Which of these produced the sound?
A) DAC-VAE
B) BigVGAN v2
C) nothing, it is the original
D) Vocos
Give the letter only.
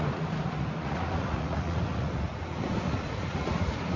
D